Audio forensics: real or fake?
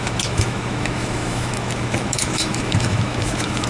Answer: fake